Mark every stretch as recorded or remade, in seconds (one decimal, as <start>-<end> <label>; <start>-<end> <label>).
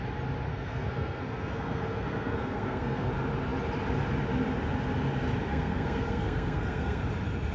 0.0-0.5 recorded; 0.5-3.1 remade; 3.1-5.5 recorded; 5.5-7.0 remade; 7.0-7.5 recorded